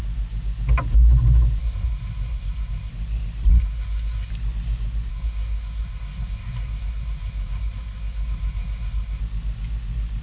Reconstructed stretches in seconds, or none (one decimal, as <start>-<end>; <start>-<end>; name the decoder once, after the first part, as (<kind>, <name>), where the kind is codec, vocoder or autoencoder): 1.6-2.9 (codec, SNAC); 3.5-4.3; 5.1-9.2